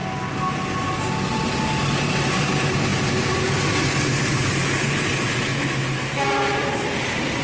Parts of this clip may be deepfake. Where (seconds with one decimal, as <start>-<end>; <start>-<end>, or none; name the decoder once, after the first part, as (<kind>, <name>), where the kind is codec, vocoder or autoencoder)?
2.9-3.5 (vocoder, BigVGAN v2)